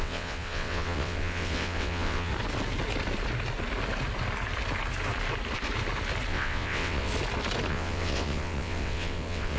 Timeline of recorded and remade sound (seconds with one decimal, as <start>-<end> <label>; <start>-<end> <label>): 0.0-2.3 remade; 2.3-6.3 recorded; 6.3-7.1 remade; 7.1-7.7 recorded; 7.7-9.6 remade

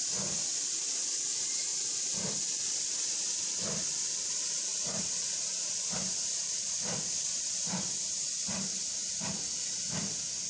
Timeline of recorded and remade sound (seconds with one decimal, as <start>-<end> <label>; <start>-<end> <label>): 0.0-1.7 recorded; 1.7-2.4 remade; 2.4-4.7 recorded; 4.7-6.8 remade; 6.8-10.5 recorded

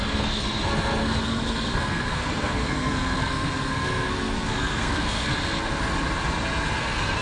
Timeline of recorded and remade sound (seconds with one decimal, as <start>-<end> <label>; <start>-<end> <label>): 0.0-5.3 remade; 5.3-6.8 recorded; 6.8-7.2 remade

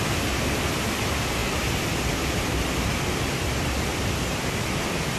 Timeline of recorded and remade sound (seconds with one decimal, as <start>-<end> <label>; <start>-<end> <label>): 0.0-5.2 recorded